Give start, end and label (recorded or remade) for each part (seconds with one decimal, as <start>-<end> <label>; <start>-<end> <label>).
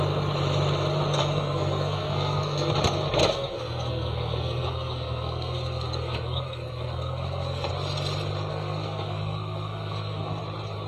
0.0-1.2 recorded; 1.2-2.7 remade; 2.7-3.2 recorded; 3.2-7.7 remade; 7.7-8.5 recorded; 8.5-10.4 remade; 10.4-10.9 recorded